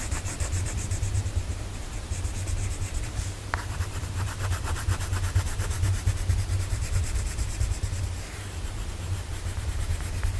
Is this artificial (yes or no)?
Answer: yes